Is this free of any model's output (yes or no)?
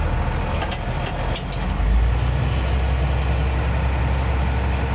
yes